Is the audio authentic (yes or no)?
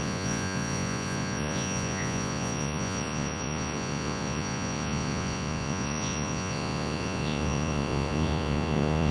no